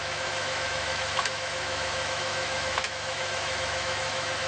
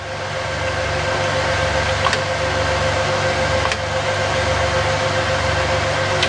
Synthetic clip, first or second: first